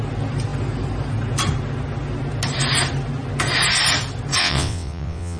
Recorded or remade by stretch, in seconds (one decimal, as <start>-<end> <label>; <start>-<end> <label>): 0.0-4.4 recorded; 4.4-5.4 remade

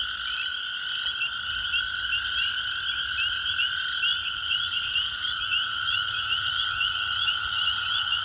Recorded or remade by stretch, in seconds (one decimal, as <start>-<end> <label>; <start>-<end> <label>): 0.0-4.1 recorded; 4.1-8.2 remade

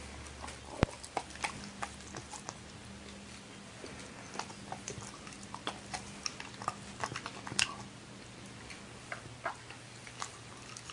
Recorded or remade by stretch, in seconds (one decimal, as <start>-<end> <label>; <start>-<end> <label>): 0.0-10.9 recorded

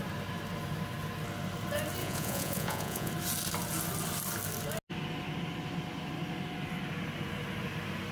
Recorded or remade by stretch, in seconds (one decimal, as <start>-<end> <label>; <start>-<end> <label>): 0.0-2.0 recorded; 2.0-3.1 remade; 3.1-8.1 recorded

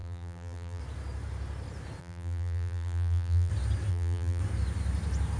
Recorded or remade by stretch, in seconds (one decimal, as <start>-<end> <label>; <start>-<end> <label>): 0.0-0.8 remade; 0.8-2.0 recorded; 2.0-3.5 remade; 3.5-3.9 recorded; 3.9-4.4 remade; 4.4-5.4 recorded

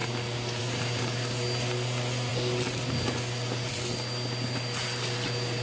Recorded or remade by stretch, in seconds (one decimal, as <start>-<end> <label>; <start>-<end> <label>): 0.0-5.6 recorded